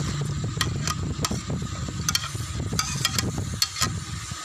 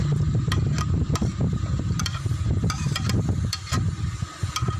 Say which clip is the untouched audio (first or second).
first